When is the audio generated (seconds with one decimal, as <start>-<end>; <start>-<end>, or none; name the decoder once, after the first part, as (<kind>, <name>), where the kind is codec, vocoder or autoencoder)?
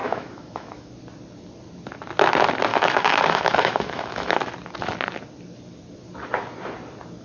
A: 0.0-0.9 (autoencoder, DAC-VAE); 2.7-4.5